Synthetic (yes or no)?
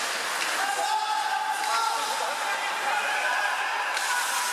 no